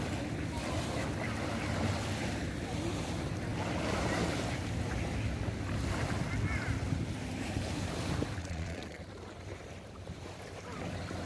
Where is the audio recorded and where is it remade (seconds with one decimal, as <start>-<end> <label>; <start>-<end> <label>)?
0.0-8.4 recorded; 8.4-9.0 remade; 9.0-11.3 recorded